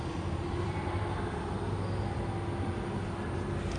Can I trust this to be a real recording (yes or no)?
yes